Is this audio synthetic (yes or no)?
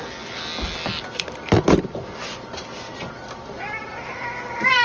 no